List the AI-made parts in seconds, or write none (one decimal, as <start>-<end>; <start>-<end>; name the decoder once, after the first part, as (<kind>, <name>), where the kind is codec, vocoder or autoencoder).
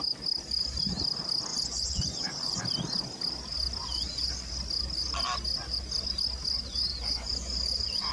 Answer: 1.5-2.6 (vocoder, Vocos); 3.8-4.5; 6.9-8.1